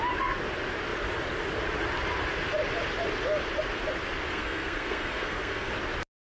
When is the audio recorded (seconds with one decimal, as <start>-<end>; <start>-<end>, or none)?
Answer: 0.0-4.3; 5.7-6.2